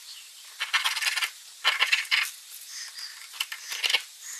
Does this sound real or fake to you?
real